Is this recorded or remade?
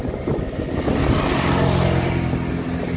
recorded